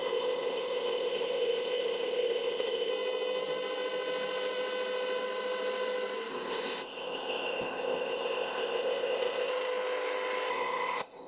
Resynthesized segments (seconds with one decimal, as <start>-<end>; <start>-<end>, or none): 0.0-2.9; 6.3-9.5; 10.5-11.3